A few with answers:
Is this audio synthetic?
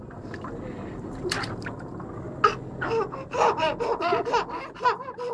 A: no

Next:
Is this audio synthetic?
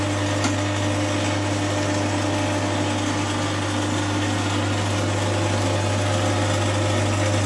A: no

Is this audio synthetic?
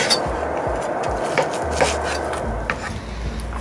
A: no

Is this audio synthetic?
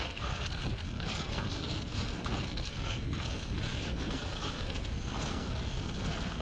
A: yes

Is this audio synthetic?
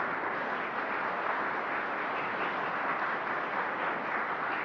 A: no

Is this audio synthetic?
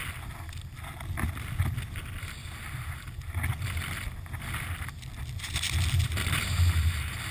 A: no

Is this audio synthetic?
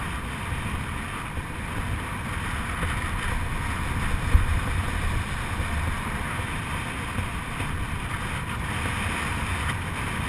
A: no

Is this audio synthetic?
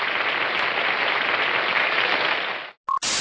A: no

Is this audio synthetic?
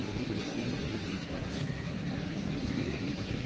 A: yes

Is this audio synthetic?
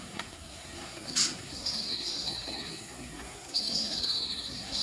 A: yes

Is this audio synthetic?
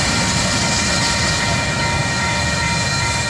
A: no